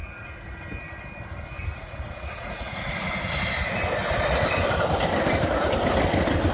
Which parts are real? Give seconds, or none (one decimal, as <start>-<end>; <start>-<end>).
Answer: 0.6-1.7; 3.1-6.5